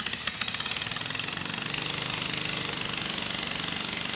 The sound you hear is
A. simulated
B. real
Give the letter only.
B